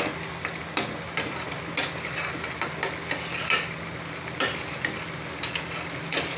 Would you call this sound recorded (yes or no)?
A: yes